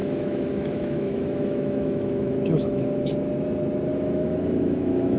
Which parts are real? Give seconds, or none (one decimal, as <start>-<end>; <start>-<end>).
3.1-3.9